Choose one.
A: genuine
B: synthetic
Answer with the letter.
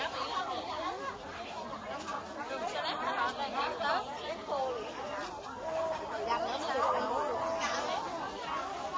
A